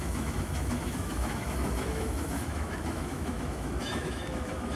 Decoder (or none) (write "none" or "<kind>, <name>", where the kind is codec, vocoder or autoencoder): autoencoder, DAC-VAE